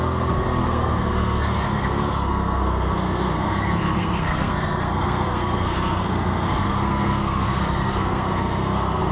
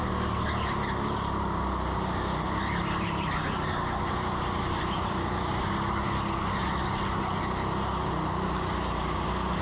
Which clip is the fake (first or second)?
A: first